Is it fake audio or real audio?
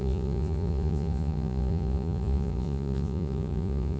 fake